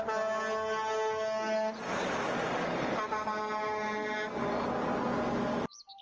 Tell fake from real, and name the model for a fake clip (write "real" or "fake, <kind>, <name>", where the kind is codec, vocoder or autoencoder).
real